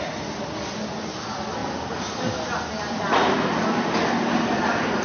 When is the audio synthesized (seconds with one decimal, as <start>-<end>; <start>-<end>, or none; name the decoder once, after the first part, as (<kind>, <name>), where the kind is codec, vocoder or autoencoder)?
none